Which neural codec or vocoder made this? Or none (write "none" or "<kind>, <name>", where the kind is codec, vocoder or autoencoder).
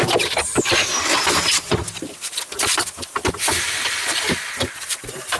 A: none